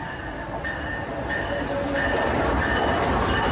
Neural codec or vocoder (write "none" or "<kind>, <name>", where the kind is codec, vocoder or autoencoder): none